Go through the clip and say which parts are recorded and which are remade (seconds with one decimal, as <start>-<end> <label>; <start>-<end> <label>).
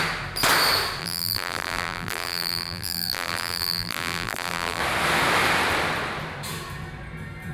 0.0-1.0 recorded; 1.0-4.8 remade; 4.8-7.5 recorded